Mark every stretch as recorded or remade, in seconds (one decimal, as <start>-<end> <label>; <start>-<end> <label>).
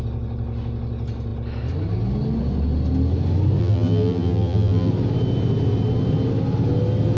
0.0-3.6 recorded; 3.6-4.9 remade; 4.9-7.2 recorded